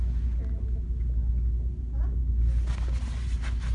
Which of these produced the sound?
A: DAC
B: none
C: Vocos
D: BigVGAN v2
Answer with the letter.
B